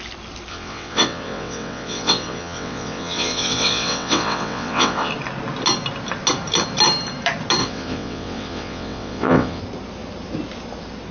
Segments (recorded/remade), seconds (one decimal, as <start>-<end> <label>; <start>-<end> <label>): 0.0-0.5 recorded; 0.5-5.1 remade; 5.1-7.6 recorded; 7.6-9.6 remade; 9.6-11.1 recorded